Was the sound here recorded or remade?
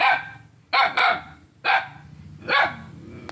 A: recorded